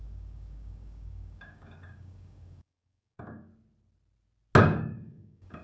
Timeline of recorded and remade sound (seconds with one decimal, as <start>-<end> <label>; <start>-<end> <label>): 0.0-3.5 remade; 3.5-4.6 recorded; 4.6-5.6 remade